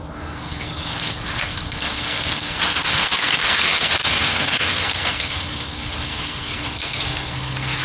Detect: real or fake fake